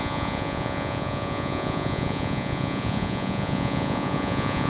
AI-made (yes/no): yes